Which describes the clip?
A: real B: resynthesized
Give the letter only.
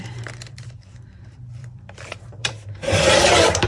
B